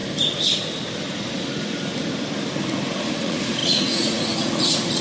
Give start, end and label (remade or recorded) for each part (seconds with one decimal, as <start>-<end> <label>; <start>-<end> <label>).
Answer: 0.0-3.0 recorded; 3.0-5.0 remade